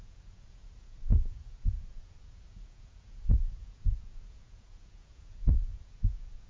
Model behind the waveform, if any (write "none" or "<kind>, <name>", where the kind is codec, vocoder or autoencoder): vocoder, Vocos